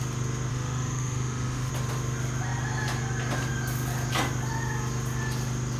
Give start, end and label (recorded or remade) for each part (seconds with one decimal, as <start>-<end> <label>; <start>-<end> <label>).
0.0-0.5 recorded; 0.5-1.7 remade; 1.7-5.8 recorded

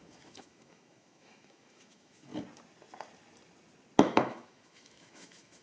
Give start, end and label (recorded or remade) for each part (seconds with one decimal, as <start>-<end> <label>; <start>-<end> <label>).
0.0-2.3 remade; 2.3-4.0 recorded; 4.0-5.6 remade

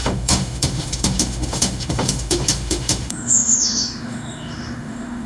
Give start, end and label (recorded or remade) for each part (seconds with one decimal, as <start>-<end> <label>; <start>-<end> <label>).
0.0-5.3 remade

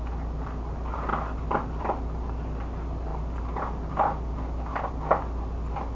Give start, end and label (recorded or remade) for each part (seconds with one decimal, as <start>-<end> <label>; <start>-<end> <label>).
0.0-6.0 recorded